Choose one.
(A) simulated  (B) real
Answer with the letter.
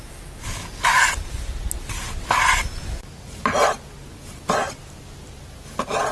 B